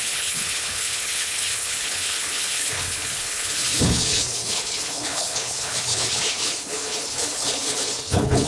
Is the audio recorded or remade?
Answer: remade